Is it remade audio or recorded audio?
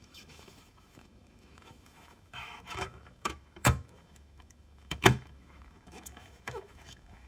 remade